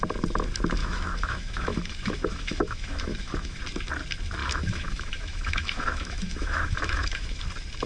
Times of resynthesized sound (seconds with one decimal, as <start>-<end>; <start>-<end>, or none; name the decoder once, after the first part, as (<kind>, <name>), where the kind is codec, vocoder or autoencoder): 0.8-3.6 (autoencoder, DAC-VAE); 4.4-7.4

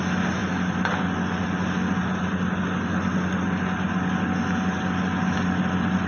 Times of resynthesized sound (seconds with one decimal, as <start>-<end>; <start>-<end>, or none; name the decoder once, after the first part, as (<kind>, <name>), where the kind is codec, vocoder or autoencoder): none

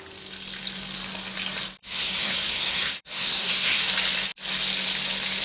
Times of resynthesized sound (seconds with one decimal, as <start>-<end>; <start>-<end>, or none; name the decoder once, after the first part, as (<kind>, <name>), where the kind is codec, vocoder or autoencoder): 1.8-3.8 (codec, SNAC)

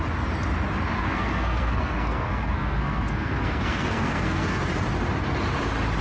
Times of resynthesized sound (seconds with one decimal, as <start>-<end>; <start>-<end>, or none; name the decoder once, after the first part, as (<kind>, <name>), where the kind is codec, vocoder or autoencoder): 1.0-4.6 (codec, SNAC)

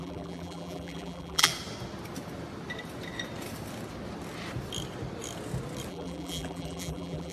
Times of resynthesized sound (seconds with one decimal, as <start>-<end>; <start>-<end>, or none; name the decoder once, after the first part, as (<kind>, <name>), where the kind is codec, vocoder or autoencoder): 0.0-1.5 (vocoder, BigVGAN v2); 5.9-7.3